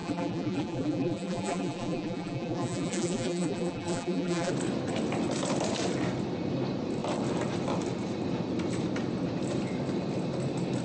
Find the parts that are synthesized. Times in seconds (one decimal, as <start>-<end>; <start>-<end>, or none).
0.0-4.5